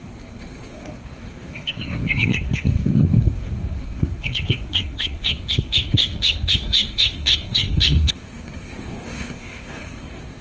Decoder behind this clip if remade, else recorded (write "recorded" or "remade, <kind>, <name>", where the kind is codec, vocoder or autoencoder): remade, codec, SNAC